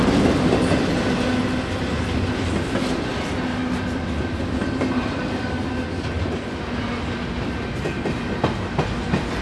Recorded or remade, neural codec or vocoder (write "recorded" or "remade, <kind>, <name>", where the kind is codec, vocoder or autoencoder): recorded